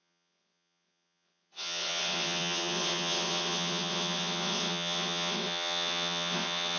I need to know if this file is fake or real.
fake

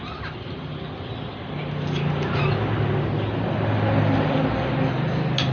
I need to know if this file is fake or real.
real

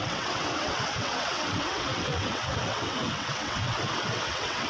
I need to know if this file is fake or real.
fake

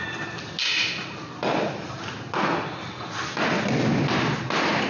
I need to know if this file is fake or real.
real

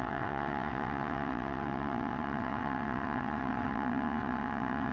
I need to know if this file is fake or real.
fake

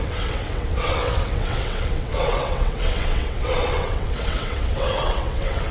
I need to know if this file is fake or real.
fake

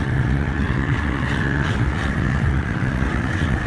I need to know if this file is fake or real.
fake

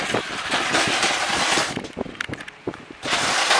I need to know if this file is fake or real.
real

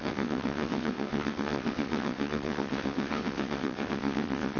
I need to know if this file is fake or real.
fake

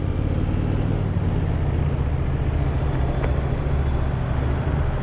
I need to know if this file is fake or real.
real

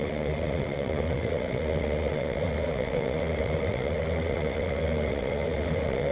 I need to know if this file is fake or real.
fake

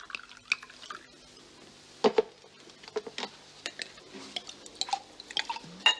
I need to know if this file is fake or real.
real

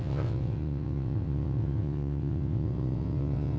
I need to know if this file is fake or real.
fake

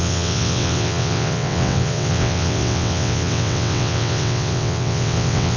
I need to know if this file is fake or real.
fake